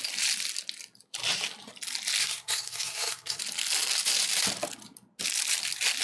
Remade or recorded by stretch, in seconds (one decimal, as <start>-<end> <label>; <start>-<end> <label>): 0.0-2.2 recorded; 2.2-3.4 remade; 3.4-6.0 recorded